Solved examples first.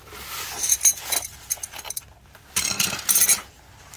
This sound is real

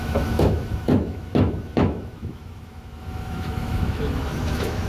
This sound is fake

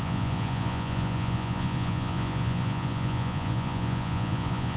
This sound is fake